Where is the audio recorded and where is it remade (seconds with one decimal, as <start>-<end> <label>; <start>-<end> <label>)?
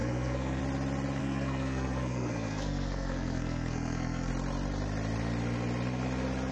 0.0-0.6 remade; 0.6-1.2 recorded; 1.2-4.3 remade; 4.3-6.5 recorded